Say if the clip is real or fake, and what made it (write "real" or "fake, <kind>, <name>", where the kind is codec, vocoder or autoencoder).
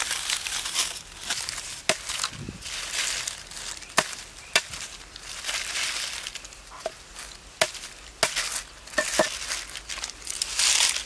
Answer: real